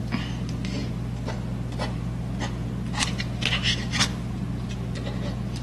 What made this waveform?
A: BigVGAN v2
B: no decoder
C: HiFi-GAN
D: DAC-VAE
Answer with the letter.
B